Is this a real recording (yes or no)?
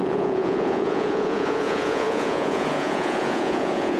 no